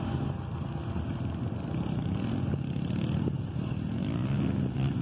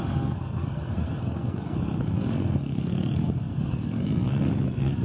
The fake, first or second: second